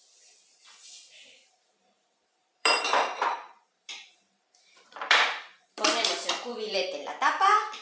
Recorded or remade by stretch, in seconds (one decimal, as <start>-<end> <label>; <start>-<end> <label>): 0.0-1.2 recorded; 1.2-5.9 remade; 5.9-7.8 recorded